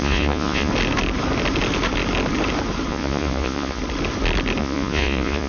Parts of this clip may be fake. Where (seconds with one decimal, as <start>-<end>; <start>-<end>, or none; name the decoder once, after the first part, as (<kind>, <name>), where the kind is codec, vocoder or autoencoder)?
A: 0.0-0.7 (vocoder, Vocos); 2.9-3.8; 4.6-5.5